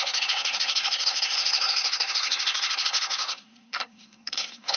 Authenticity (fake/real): fake